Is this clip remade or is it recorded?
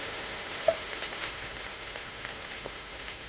remade